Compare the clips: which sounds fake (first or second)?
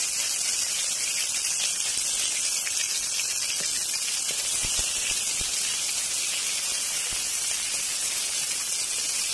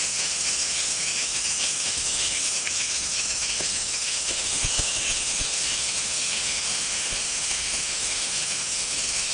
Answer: second